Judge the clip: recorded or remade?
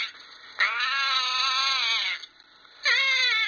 recorded